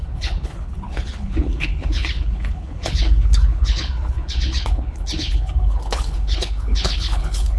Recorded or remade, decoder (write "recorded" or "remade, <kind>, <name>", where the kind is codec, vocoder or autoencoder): remade, codec, HILCodec